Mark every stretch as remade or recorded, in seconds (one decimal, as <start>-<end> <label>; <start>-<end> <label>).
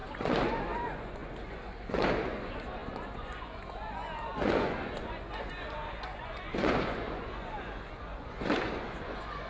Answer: 0.0-9.5 remade